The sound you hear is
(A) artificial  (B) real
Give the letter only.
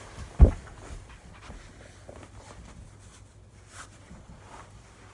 B